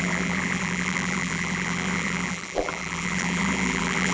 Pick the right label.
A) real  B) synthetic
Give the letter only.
B